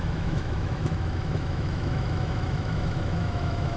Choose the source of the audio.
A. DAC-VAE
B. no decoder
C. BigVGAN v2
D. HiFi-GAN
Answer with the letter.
A